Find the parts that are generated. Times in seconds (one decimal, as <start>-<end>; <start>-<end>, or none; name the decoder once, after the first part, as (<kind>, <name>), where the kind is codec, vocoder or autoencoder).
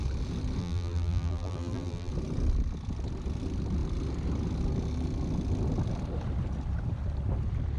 0.6-2.1 (vocoder, BigVGAN v2)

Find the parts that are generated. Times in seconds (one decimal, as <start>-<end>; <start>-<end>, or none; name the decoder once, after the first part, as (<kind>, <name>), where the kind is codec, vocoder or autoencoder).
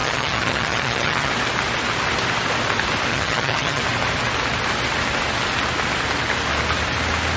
0.0-1.3 (vocoder, HiFi-GAN); 3.1-3.8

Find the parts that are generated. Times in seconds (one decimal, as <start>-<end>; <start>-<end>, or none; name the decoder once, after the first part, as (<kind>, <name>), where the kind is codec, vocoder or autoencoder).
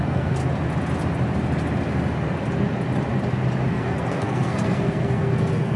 0.0-0.4 (codec, SNAC); 3.7-5.8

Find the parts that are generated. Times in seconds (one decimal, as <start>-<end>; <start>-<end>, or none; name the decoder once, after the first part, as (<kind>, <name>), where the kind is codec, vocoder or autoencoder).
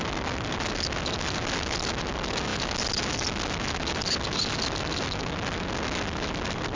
none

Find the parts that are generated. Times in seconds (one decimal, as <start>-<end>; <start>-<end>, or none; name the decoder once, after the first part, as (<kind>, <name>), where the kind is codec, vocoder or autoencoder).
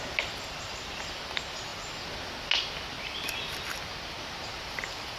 none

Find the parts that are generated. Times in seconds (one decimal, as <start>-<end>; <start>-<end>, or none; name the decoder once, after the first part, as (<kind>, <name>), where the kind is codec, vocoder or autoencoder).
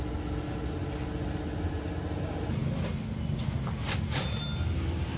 none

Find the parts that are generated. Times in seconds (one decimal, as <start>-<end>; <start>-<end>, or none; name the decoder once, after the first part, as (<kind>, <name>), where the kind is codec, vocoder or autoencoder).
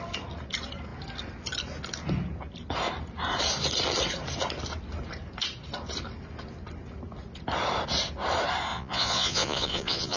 8.7-10.2 (vocoder, Vocos)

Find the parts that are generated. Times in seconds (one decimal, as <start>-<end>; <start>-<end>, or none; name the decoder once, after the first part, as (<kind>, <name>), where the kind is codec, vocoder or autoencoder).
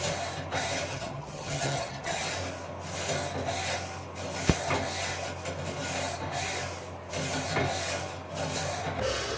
0.9-2.2 (vocoder, HiFi-GAN)